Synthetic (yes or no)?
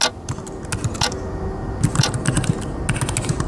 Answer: no